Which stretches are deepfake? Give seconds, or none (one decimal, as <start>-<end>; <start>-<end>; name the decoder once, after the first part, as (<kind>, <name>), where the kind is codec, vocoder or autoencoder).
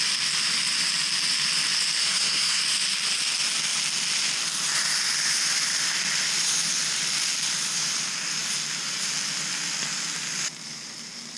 2.0-2.6 (codec, SNAC)